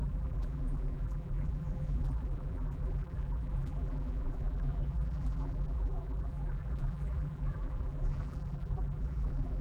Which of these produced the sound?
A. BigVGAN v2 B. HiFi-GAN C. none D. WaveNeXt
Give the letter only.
A